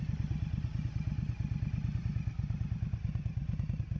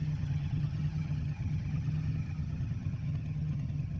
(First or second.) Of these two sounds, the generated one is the second